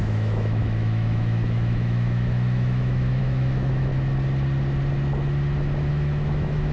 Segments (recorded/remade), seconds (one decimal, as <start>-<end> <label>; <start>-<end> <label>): 0.0-3.9 remade; 3.9-5.9 recorded; 5.9-6.7 remade